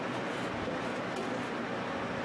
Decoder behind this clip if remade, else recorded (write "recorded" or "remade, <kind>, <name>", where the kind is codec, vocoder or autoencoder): recorded